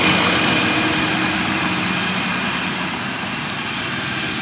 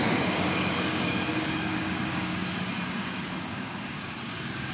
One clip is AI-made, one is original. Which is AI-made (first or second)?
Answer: second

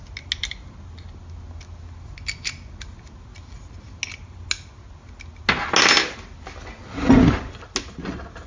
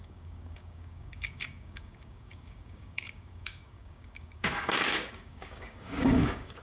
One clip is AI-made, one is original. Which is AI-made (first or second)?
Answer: second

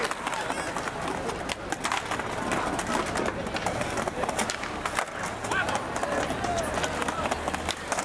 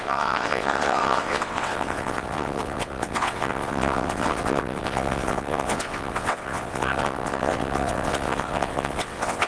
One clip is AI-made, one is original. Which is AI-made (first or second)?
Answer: second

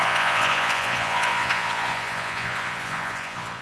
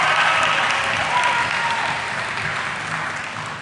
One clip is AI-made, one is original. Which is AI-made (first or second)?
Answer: first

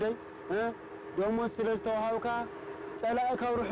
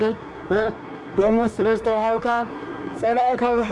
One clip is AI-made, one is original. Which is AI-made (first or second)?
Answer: second